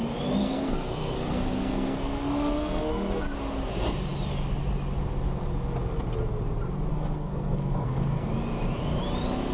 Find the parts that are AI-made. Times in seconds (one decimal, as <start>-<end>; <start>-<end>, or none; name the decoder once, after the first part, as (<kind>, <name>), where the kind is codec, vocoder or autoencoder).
0.4-3.2 (codec, SNAC); 6.9-8.3